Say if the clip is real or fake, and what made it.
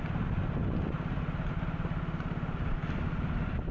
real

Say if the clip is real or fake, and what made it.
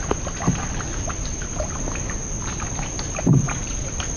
real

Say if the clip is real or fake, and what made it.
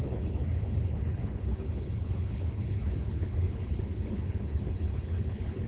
fake, codec, HILCodec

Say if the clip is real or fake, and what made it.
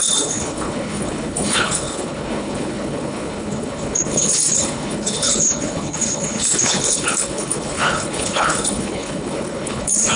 fake, codec, HILCodec